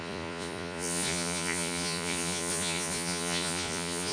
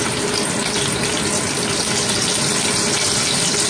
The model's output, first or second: first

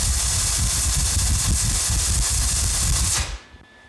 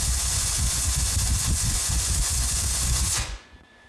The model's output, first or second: second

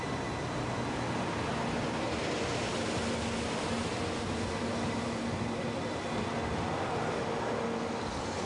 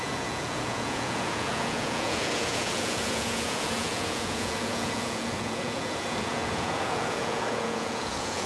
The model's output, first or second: second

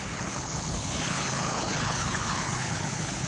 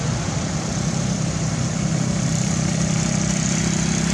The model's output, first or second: first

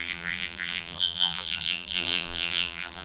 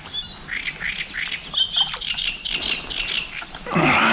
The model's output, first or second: first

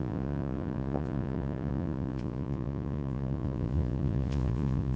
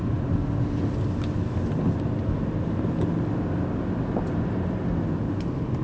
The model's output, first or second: first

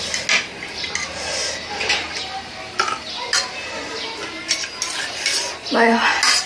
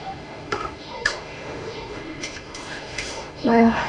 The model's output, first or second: second